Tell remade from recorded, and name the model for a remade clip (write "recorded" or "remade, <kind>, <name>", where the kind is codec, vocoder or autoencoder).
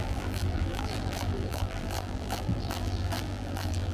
remade, vocoder, BigVGAN v2